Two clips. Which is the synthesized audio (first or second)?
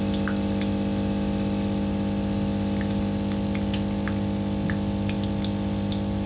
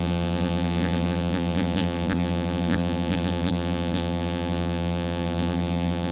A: second